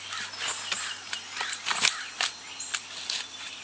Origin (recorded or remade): recorded